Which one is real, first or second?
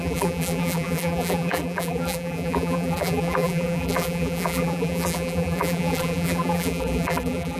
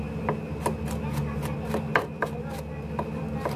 second